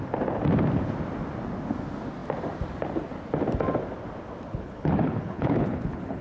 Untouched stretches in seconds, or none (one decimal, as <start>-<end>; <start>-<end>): 0.0-4.5

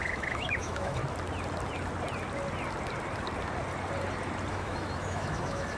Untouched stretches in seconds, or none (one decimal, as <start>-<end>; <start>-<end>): 1.0-4.5

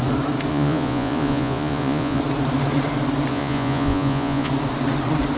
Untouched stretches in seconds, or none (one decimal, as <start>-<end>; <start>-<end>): 0.0-0.5; 2.2-3.3; 4.5-5.4

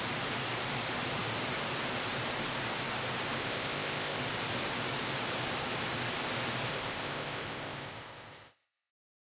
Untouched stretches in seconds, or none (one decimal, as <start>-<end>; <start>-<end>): 0.0-3.4; 4.2-6.7; 8.9-9.3

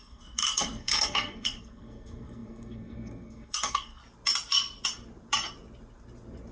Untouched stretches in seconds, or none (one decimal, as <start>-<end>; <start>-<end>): 4.0-6.5